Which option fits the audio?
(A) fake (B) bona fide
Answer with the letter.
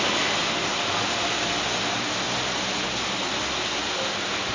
B